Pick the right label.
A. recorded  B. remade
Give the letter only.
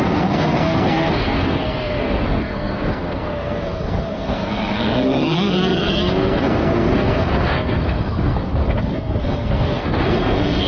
B